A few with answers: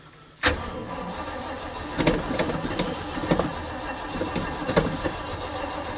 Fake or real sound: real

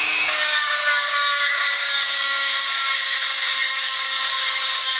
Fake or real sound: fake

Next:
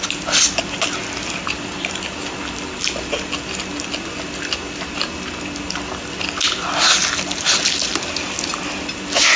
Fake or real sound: real